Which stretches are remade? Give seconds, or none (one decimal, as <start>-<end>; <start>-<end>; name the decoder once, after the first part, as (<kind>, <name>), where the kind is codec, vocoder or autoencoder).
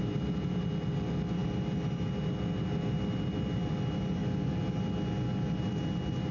none